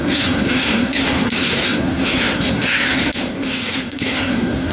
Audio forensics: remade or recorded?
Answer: remade